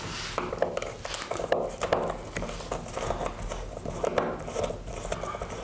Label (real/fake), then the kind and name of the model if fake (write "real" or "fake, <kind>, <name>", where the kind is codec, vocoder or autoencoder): real